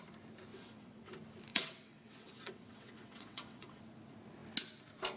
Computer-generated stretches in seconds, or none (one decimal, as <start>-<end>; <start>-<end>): 0.5-1.1; 1.5-3.8